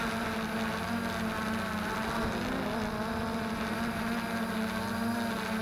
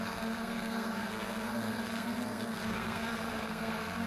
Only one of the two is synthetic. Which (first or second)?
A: second